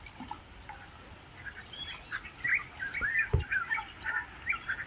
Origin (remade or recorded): recorded